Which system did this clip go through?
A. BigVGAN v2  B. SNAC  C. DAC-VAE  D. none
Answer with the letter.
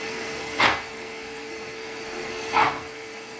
B